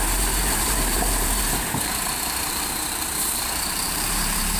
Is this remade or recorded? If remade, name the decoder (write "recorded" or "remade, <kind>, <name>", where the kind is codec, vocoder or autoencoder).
remade, vocoder, BigVGAN v2